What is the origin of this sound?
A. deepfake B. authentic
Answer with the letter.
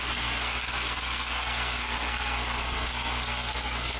A